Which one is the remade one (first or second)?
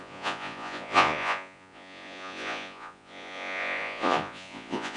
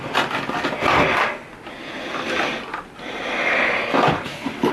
first